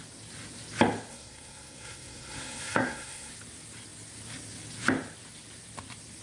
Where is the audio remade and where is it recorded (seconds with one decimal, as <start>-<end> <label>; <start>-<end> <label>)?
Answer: 0.0-1.1 recorded; 1.1-3.3 remade; 3.3-6.2 recorded